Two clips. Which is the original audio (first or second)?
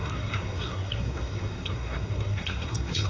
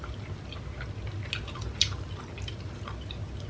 second